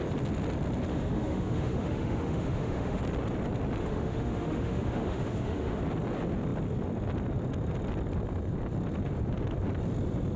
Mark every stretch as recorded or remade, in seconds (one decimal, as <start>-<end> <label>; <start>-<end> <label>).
0.0-0.9 recorded; 0.9-3.0 remade; 3.0-3.8 recorded; 3.8-5.8 remade; 5.8-10.4 recorded